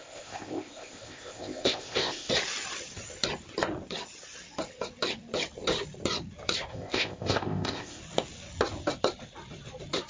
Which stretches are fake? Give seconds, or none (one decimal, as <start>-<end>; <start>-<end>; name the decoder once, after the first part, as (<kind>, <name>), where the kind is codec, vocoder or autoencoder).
0.0-2.3 (codec, ZipCodec); 6.7-8.0